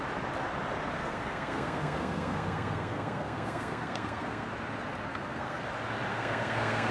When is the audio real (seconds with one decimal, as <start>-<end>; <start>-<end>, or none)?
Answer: 0.0-1.0; 4.5-5.1; 5.6-6.1